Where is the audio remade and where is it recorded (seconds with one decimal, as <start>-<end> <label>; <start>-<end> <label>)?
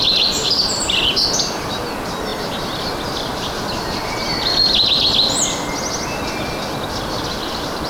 0.0-7.9 recorded